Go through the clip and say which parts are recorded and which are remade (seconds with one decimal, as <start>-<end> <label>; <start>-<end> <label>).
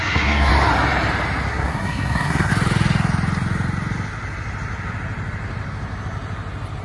0.0-0.5 remade; 0.5-1.5 recorded; 1.5-2.5 remade; 2.5-6.8 recorded